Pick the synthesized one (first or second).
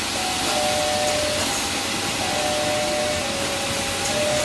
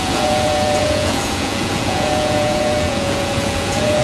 second